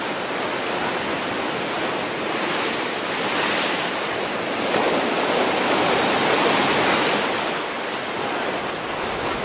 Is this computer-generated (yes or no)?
yes